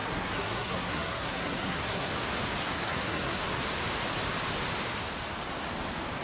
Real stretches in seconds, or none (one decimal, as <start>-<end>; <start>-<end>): 2.1-2.6; 3.4-6.2

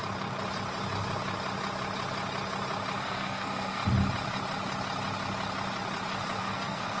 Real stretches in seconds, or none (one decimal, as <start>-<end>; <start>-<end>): 0.0-3.0; 3.8-6.4

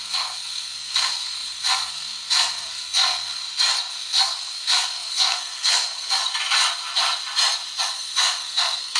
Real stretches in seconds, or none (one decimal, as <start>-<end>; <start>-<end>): 3.4-3.9; 6.2-7.9

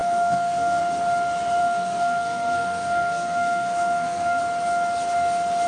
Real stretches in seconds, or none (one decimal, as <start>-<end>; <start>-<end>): 0.8-1.6; 4.4-5.7

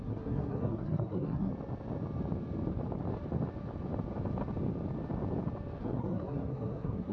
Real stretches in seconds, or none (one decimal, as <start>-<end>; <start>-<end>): 1.5-5.8

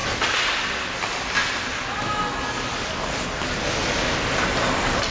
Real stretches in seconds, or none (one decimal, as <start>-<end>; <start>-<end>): 0.0-5.1